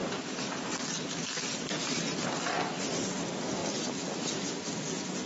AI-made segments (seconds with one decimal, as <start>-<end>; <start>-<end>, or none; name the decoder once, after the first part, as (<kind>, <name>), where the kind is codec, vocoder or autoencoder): none